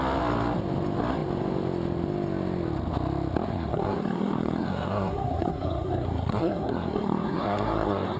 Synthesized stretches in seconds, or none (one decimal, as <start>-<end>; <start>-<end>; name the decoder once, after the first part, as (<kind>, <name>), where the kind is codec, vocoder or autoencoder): 3.5-8.2 (codec, SNAC)